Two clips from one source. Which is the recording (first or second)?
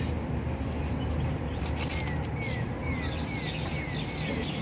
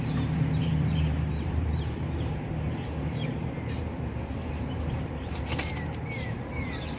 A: first